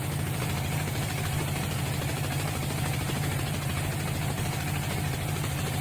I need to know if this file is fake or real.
fake